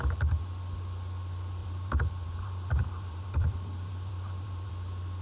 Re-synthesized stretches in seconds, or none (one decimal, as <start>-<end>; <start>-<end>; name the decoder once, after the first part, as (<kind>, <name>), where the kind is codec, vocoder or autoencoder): 1.6-4.7 (vocoder, BigVGAN v2)